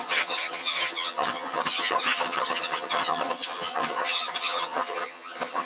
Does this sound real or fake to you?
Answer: fake